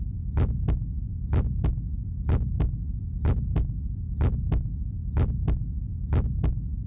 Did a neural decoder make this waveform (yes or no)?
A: no